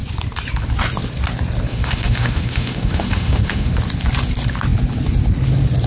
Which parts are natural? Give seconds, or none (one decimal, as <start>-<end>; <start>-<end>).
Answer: 0.0-1.7; 3.7-5.9